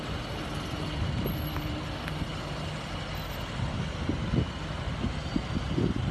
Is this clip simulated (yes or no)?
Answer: no